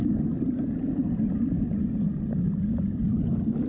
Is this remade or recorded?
recorded